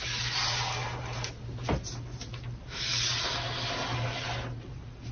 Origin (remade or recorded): recorded